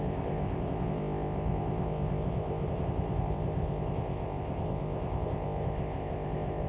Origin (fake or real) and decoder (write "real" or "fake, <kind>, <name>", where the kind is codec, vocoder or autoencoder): fake, codec, ZipCodec